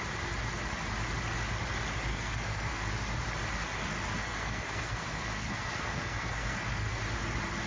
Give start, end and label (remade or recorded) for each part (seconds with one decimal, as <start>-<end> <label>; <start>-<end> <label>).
0.0-2.1 recorded; 2.1-2.9 remade; 2.9-4.3 recorded; 4.3-7.0 remade; 7.0-7.7 recorded